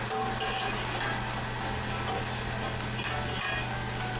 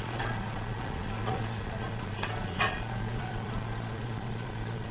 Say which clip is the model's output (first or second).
second